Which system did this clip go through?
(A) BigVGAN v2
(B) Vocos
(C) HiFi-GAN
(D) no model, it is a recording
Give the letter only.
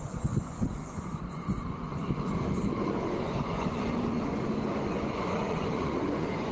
B